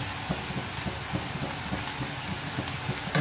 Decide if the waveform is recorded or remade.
recorded